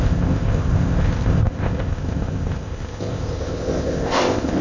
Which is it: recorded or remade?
remade